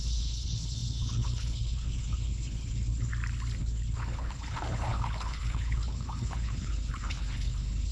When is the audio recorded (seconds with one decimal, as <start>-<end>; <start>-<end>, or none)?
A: 3.1-3.6